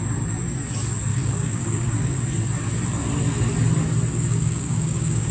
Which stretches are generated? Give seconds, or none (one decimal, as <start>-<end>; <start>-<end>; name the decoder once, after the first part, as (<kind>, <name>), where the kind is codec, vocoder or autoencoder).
1.1-2.2 (codec, DAC); 4.1-5.3